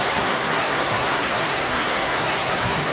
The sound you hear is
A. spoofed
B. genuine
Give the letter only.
A